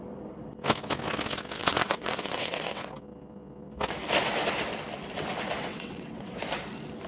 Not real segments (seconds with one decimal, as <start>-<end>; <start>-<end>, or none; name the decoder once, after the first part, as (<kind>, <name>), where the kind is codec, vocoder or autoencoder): 1.6-2.9 (vocoder, WaveNeXt); 5.6-6.4